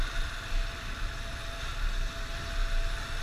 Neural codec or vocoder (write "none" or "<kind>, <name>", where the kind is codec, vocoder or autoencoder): none